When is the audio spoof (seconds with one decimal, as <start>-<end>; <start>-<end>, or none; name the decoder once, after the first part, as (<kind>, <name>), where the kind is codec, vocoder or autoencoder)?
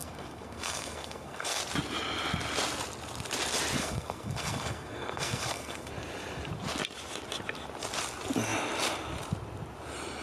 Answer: 0.0-1.6 (codec, SNAC); 3.8-5.9